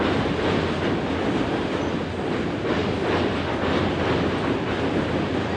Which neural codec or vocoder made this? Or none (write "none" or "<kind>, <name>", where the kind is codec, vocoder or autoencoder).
none